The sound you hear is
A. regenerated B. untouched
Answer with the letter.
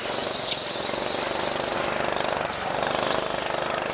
B